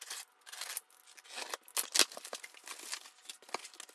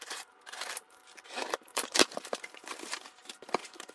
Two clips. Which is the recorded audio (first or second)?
first